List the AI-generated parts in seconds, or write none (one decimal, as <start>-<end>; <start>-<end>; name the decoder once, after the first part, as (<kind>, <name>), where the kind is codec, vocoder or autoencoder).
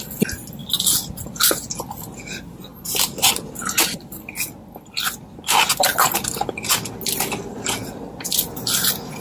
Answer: 2.7-4.2 (vocoder, BigVGAN v2); 5.9-6.7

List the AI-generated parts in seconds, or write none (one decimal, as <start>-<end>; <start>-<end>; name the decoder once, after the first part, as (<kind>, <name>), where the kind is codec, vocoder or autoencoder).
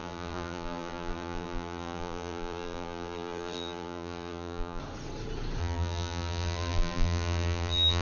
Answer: 0.0-4.8 (vocoder, BigVGAN v2); 5.6-8.0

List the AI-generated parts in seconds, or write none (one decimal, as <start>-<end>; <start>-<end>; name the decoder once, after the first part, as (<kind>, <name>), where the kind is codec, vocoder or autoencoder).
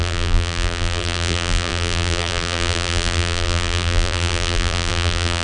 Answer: 0.0-5.4 (vocoder, BigVGAN v2)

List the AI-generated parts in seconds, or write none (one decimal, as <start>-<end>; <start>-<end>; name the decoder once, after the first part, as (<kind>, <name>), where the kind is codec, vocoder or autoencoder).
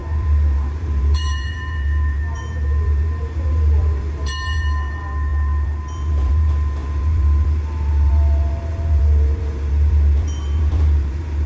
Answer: 0.0-11.5 (vocoder, BigVGAN v2)